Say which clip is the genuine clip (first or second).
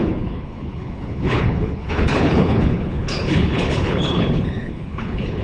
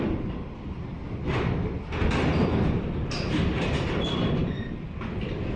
second